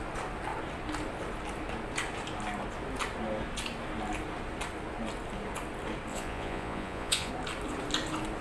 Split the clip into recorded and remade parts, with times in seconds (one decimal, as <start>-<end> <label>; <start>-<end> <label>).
0.0-6.1 recorded; 6.1-7.3 remade; 7.3-8.4 recorded